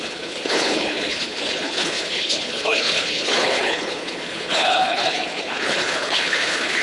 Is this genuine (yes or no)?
no